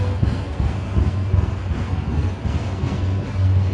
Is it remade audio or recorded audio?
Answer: remade